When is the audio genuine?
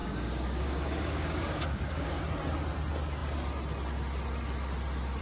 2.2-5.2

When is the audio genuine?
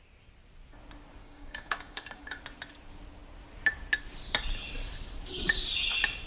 0.0-1.2; 2.4-6.3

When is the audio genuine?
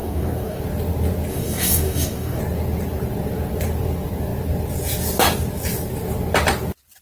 0.6-1.3; 2.4-7.0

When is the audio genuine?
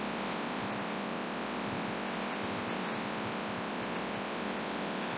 0.0-5.2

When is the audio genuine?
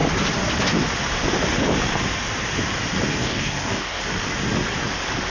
0.0-3.2; 4.0-5.3